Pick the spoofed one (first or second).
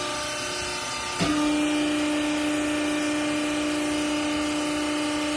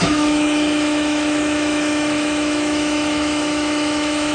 second